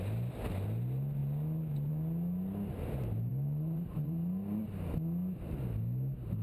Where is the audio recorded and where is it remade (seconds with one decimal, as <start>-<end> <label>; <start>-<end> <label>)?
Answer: 0.0-3.3 recorded; 3.3-4.6 remade; 4.6-6.4 recorded